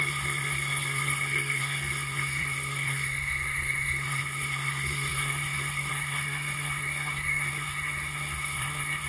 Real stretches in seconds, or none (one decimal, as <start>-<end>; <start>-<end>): none